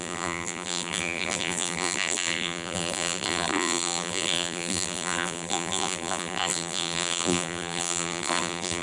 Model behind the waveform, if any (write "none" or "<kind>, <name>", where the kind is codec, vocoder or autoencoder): vocoder, BigVGAN v2